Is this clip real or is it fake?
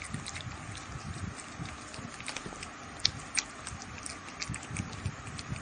real